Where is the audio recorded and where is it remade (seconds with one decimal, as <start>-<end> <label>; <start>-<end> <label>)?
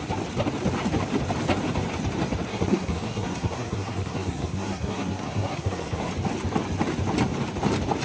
0.0-2.5 recorded; 2.5-6.1 remade; 6.1-8.0 recorded